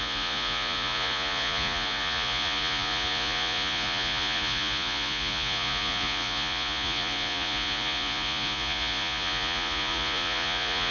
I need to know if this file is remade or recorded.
remade